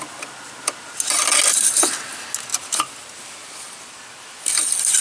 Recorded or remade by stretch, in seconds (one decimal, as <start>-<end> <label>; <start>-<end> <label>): 0.0-5.0 recorded